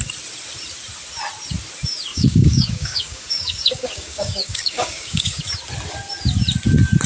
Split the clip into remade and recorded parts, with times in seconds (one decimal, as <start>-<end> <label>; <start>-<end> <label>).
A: 0.0-2.1 recorded; 2.1-5.4 remade; 5.4-7.1 recorded